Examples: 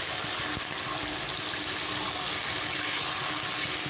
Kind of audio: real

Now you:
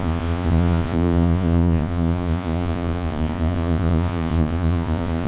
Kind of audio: fake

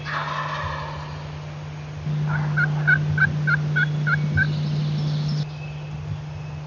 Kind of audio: real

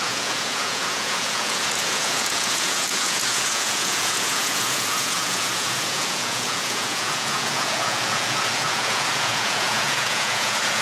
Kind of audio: fake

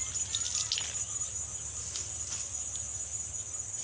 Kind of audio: real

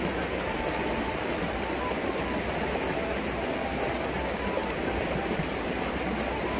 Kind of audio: real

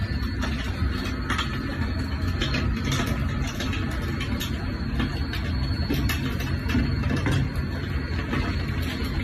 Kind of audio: real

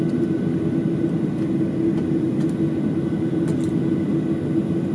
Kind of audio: real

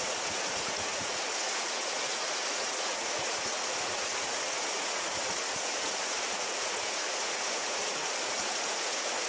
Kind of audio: fake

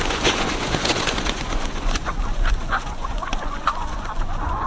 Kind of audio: fake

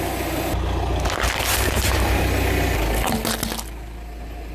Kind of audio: real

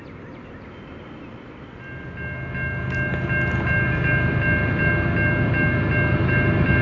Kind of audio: real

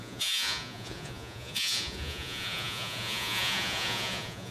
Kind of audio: fake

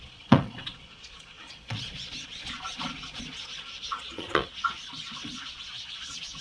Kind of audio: fake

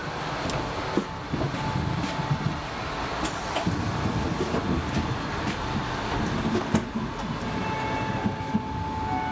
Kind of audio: real